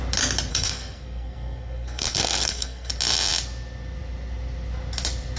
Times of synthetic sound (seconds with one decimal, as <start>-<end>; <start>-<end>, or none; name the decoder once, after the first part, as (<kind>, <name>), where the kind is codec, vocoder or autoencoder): 0.5-2.9 (codec, SNAC)

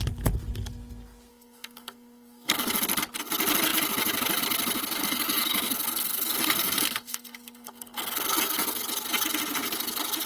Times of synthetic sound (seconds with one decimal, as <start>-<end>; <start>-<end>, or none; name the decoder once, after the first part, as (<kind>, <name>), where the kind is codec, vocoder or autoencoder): 1.3-2.7 (codec, SNAC); 5.0-8.8